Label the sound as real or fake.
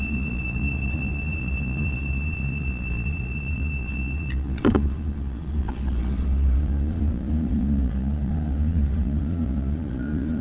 fake